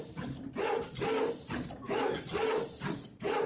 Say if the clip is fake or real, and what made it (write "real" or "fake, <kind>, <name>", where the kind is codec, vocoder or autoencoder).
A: real